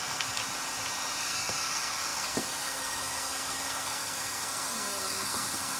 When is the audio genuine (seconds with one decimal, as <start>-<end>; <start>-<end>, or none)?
0.4-1.2